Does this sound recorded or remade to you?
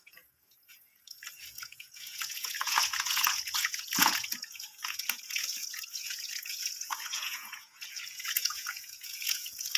remade